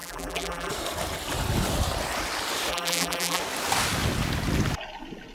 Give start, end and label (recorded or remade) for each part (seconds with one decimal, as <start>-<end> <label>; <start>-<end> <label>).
0.0-0.7 remade; 0.7-2.7 recorded; 2.7-3.4 remade; 3.4-5.3 recorded